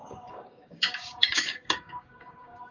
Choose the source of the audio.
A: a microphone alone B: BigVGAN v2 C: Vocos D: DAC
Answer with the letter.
D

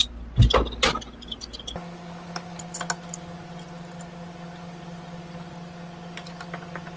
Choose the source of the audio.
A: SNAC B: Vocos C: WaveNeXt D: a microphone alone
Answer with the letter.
D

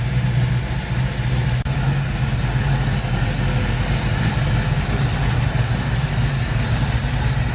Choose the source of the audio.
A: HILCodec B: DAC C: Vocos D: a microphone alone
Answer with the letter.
D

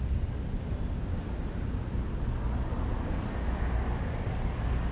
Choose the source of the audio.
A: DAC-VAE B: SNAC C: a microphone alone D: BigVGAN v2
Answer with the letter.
C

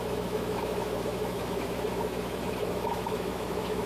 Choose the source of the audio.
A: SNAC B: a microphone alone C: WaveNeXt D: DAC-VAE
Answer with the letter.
D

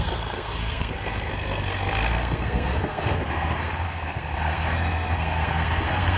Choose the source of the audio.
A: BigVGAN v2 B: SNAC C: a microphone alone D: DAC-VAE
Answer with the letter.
B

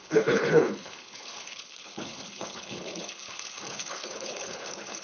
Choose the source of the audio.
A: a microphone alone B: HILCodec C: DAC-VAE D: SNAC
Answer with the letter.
B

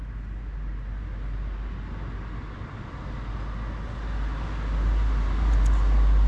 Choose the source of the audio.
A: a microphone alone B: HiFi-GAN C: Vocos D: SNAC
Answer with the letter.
A